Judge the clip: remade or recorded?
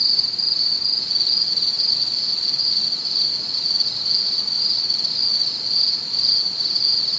recorded